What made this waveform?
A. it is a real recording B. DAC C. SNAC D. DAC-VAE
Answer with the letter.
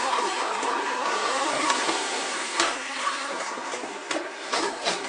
C